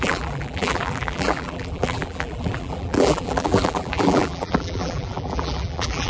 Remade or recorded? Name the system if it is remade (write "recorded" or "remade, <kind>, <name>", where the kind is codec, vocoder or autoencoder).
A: remade, vocoder, BigVGAN v2